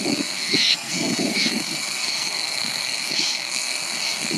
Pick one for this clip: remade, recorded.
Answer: remade